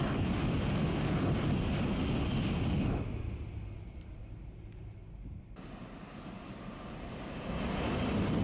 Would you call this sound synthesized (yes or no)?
no